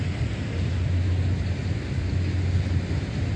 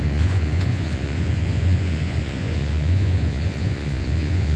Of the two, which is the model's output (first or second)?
second